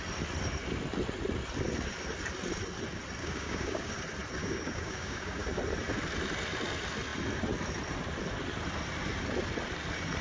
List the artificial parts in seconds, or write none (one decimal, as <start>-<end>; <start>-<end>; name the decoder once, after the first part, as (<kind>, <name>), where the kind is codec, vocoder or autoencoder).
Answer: 3.2-3.9 (codec, DAC); 4.4-5.6